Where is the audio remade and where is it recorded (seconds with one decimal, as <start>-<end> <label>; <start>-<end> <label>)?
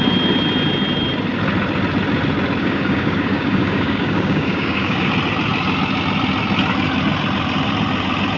0.0-2.6 recorded; 2.6-5.1 remade; 5.1-8.4 recorded